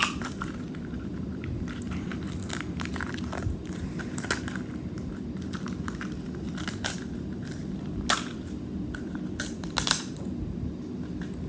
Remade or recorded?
recorded